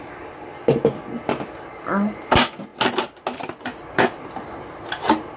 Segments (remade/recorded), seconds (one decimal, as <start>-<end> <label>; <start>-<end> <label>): 0.0-5.4 recorded